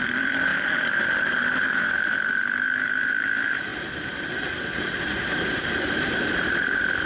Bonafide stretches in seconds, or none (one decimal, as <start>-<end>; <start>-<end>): none